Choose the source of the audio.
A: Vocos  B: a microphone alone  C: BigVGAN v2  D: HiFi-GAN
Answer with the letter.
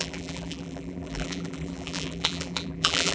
C